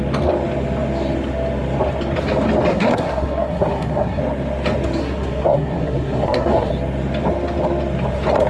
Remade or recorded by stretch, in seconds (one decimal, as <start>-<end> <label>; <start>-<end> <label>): 0.0-2.7 recorded; 2.7-4.2 remade; 4.2-5.0 recorded; 5.0-6.7 remade; 6.7-8.5 recorded